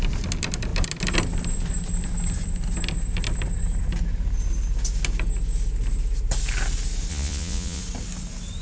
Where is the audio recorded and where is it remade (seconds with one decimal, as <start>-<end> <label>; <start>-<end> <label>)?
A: 0.0-7.1 recorded; 7.1-7.8 remade; 7.8-8.6 recorded

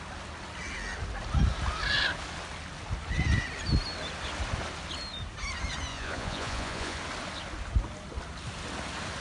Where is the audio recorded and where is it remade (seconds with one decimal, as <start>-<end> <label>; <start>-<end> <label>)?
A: 0.0-5.9 recorded; 5.9-7.0 remade; 7.0-9.2 recorded

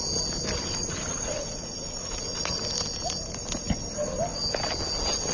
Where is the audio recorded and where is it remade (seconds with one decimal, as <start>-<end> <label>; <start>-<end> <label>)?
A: 0.0-0.7 recorded; 0.7-2.6 remade; 2.6-5.3 recorded

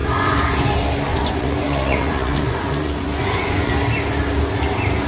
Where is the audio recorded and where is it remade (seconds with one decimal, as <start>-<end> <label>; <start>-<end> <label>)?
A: 0.0-0.7 remade; 0.7-1.1 recorded; 1.1-3.7 remade; 3.7-5.1 recorded

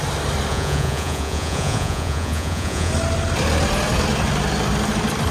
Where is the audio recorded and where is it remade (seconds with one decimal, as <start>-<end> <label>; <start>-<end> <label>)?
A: 0.0-0.5 recorded; 0.5-2.9 remade; 2.9-5.3 recorded

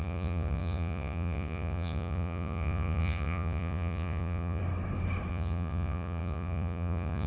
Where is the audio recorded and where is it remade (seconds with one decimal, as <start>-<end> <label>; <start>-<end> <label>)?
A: 0.0-4.6 remade; 4.6-5.3 recorded; 5.3-7.3 remade